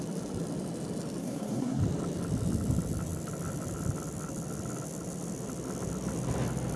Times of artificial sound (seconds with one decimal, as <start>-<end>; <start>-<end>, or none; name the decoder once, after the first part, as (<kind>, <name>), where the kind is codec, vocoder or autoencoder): 1.2-1.8 (codec, SNAC)